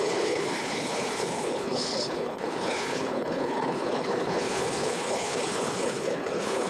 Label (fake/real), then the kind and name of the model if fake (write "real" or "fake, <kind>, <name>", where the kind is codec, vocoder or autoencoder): fake, codec, HILCodec